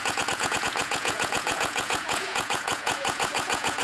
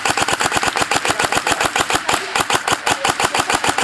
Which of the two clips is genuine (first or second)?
second